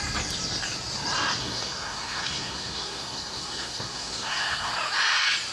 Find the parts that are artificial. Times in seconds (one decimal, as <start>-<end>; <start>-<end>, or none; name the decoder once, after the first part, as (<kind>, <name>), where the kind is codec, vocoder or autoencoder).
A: 1.4-4.7 (codec, SNAC)